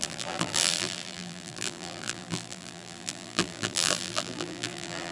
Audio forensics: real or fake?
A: fake